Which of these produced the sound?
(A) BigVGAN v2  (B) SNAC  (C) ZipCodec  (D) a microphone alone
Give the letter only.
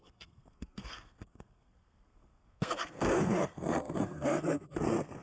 B